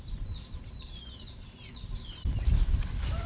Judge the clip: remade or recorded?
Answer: remade